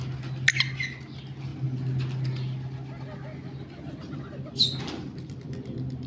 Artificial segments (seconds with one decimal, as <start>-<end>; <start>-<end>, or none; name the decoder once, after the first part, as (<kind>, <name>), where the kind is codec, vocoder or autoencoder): none